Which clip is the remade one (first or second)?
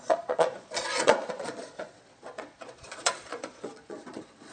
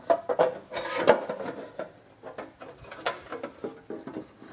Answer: first